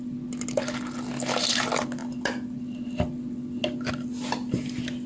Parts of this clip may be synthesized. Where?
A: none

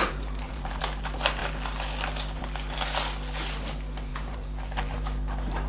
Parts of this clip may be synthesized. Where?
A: 0.0-0.8; 4.1-5.7

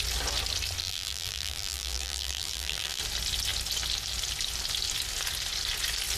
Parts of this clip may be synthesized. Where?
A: 0.8-3.0

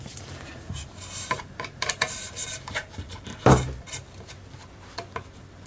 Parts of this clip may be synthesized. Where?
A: 0.5-3.9